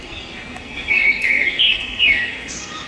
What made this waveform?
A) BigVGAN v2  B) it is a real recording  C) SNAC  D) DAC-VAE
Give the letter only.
C